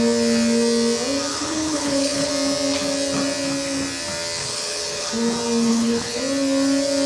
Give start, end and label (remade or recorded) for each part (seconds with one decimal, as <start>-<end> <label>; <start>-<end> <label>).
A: 0.0-1.3 recorded; 1.3-2.3 remade; 2.3-4.4 recorded; 4.4-5.1 remade; 5.1-5.7 recorded; 5.7-6.2 remade; 6.2-7.1 recorded